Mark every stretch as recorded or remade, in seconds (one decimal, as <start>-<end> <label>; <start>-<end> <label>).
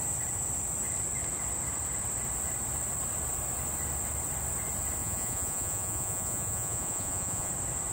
0.0-5.0 recorded; 5.0-7.5 remade; 7.5-7.9 recorded